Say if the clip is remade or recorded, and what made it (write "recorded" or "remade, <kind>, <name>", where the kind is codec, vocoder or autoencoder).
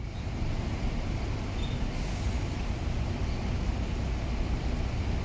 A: recorded